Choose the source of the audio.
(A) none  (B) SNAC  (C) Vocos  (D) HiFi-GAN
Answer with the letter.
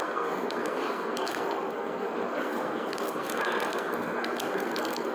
B